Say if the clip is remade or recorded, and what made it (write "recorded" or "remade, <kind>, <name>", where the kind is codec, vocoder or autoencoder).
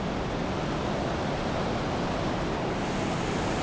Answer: recorded